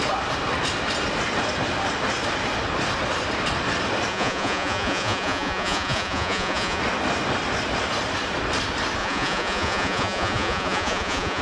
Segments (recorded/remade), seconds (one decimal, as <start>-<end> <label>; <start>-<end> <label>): 0.0-4.1 recorded; 4.1-6.8 remade; 6.8-9.0 recorded; 9.0-11.4 remade